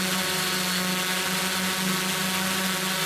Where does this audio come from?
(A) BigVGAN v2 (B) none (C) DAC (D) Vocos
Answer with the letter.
B